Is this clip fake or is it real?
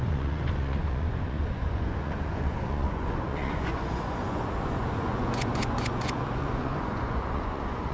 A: fake